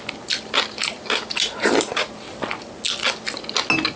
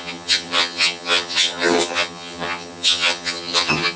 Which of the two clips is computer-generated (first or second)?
second